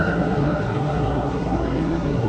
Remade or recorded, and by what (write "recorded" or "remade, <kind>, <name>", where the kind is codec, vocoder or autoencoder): remade, codec, SNAC